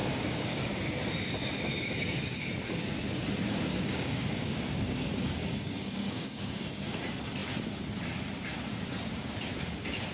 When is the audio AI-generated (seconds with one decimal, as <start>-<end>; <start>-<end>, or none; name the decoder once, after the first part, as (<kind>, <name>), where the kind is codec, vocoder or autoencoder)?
0.0-0.7 (codec, DAC); 3.7-7.0